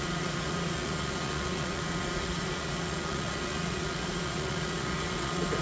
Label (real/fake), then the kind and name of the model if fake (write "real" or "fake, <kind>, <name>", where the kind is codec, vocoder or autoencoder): fake, vocoder, Vocos